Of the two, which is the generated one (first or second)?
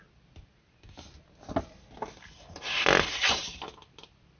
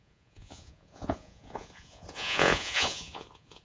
second